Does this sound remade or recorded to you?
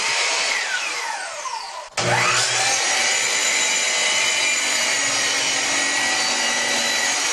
recorded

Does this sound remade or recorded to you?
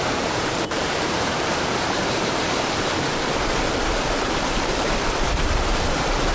remade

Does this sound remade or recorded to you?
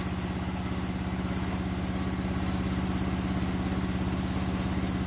recorded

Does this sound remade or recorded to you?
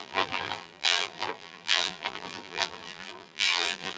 remade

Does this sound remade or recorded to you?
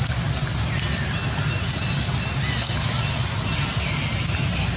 recorded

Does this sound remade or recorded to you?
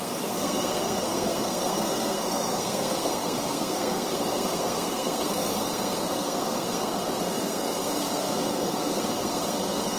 remade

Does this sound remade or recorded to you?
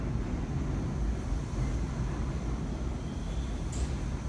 recorded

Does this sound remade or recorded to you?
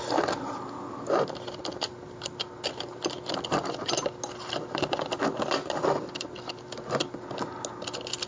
recorded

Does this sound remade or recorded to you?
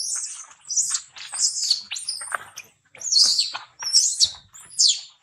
recorded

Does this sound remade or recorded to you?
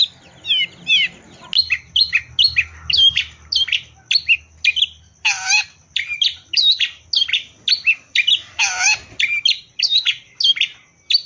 recorded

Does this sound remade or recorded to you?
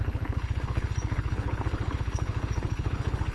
remade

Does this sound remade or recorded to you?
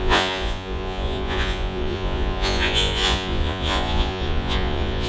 remade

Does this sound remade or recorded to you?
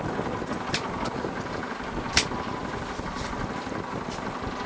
recorded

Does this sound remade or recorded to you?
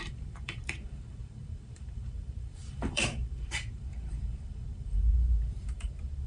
remade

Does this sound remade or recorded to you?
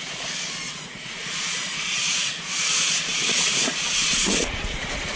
remade